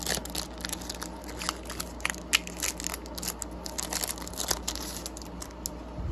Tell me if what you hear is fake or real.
real